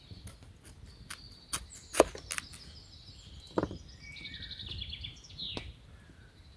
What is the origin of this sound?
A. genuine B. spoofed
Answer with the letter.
A